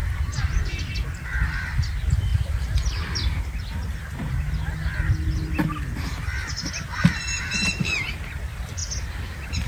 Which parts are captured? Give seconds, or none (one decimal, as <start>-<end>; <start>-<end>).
2.3-6.7; 8.8-9.7